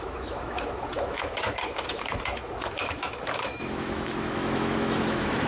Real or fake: fake